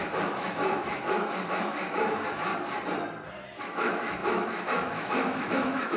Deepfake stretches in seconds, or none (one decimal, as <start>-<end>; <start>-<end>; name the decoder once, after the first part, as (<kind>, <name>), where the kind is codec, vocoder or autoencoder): 0.0-2.5 (autoencoder, DAC-VAE); 3.6-6.0